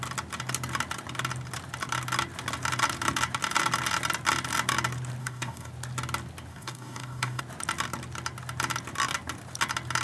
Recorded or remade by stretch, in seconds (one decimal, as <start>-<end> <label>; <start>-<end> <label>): 0.0-5.2 recorded; 5.2-5.7 remade; 5.7-6.5 recorded; 6.5-7.4 remade; 7.4-10.0 recorded